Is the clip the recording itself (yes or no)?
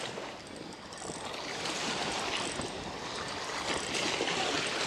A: yes